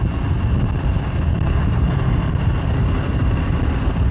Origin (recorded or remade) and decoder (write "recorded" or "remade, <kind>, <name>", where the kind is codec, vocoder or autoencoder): recorded